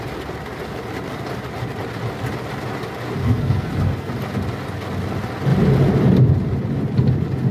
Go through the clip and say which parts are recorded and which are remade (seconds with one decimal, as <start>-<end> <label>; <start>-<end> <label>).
0.0-3.2 recorded; 3.2-4.1 remade; 4.1-7.5 recorded